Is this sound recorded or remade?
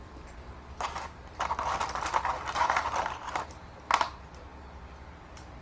recorded